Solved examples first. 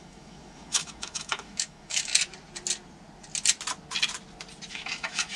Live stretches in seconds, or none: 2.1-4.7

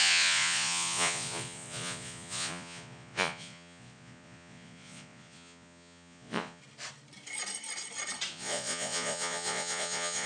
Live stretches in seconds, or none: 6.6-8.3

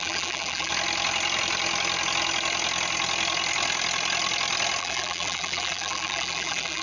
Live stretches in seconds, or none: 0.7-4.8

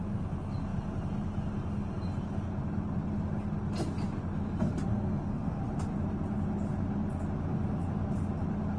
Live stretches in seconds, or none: 0.0-4.9; 5.6-8.8

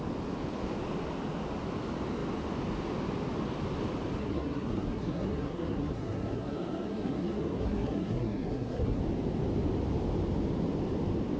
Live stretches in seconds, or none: 0.0-4.2; 9.0-11.4

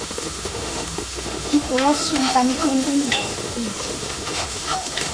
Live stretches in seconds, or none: none